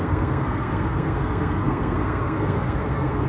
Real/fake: fake